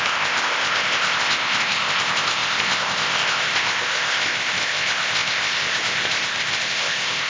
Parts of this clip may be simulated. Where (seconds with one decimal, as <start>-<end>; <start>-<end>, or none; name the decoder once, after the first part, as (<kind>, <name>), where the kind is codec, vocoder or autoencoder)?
0.0-7.3 (codec, ZipCodec)